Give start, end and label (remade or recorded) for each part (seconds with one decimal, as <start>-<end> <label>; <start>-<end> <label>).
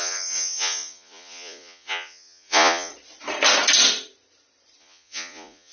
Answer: 0.0-2.9 remade; 2.9-4.8 recorded; 4.8-5.7 remade